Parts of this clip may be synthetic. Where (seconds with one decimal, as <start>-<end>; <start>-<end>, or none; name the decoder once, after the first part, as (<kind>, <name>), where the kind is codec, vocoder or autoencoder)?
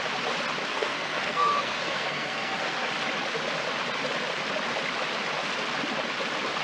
0.7-2.9 (codec, SNAC)